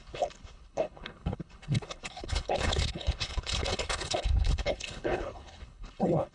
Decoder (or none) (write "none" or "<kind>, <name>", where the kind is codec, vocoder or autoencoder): codec, HILCodec